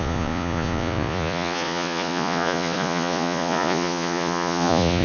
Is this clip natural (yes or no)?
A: no